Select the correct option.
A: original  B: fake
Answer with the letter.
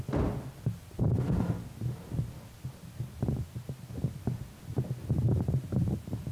A